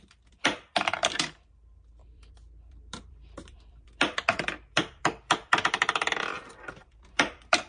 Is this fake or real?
fake